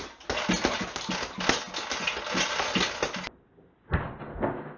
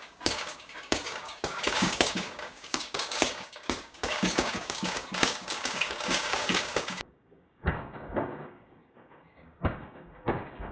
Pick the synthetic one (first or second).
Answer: second